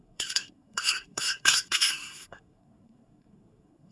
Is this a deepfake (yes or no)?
yes